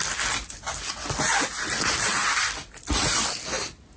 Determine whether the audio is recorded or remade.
recorded